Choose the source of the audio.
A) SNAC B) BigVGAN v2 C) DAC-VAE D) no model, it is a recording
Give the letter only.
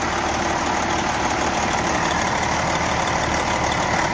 B